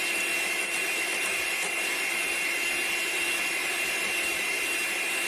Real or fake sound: real